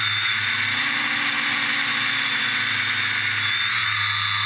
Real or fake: real